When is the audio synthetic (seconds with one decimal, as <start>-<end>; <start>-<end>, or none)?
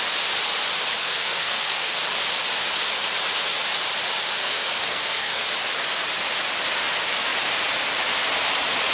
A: 1.0-2.0; 4.4-5.4